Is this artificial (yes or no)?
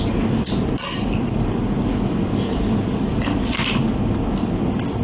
no